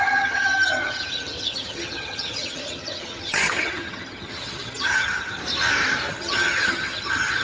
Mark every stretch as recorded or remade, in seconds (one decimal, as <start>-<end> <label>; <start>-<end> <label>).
0.0-5.4 remade; 5.4-6.1 recorded; 6.1-7.4 remade